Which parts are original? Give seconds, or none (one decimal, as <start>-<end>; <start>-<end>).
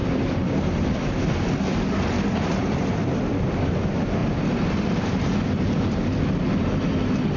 3.5-4.2; 5.0-7.4